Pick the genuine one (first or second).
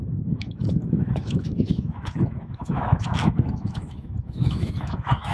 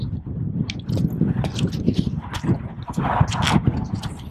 second